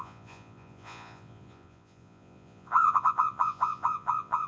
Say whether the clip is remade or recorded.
remade